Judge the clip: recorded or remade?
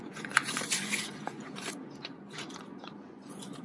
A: remade